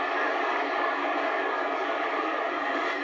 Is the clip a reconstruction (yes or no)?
yes